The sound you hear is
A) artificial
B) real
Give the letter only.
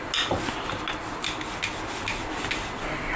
B